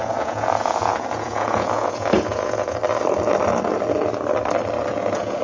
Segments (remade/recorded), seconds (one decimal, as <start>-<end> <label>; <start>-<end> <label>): 0.0-2.8 remade; 2.8-4.9 recorded; 4.9-5.4 remade